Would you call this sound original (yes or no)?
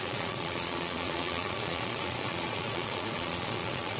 no